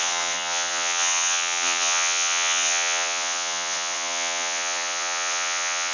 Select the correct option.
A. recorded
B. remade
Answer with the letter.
B